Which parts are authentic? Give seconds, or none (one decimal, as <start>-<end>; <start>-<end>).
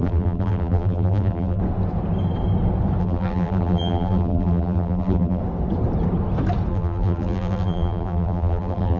1.6-3.0; 5.4-6.7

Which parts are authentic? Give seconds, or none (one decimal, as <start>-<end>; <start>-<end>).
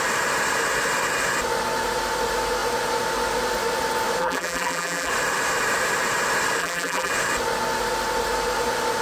0.0-4.2; 5.1-6.6; 7.1-9.0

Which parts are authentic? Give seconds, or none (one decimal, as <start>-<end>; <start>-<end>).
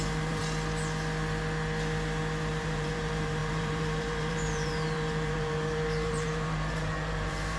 0.4-2.5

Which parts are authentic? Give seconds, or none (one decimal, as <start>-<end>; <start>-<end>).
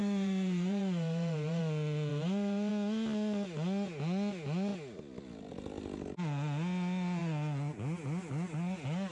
1.6-2.1; 2.7-9.1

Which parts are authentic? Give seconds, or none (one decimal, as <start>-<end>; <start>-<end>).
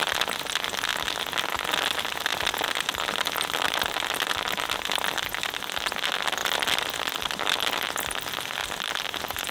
0.0-8.6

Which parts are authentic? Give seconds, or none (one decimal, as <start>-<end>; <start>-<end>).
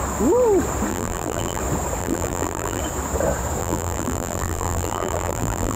0.0-0.9; 1.6-2.0; 2.8-3.6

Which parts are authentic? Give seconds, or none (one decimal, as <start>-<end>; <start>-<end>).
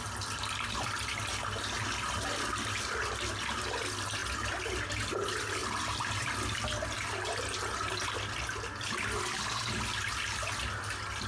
0.0-5.6; 6.3-11.3